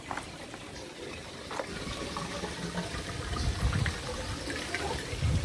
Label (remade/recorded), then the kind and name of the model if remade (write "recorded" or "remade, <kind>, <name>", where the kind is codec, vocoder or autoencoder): recorded